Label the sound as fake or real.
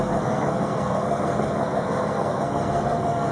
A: fake